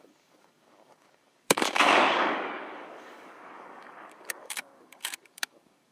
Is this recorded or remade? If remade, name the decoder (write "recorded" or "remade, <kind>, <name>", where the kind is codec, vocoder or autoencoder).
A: remade, codec, DAC